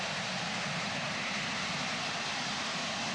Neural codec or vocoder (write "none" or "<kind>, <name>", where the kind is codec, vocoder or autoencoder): none